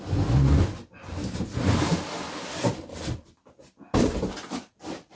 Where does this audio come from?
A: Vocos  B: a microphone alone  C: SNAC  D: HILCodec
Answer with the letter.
B